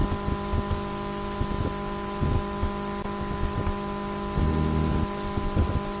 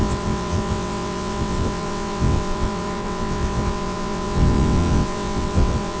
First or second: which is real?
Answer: first